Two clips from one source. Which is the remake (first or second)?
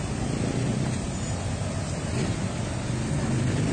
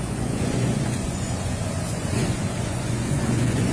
second